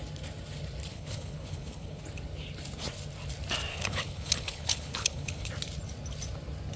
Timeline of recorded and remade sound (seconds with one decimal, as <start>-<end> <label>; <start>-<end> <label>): 0.0-0.9 recorded; 0.9-2.0 remade; 2.0-3.7 recorded; 3.7-5.5 remade; 5.5-6.8 recorded